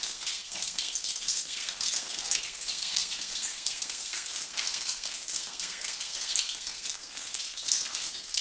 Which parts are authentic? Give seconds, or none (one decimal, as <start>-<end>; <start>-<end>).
none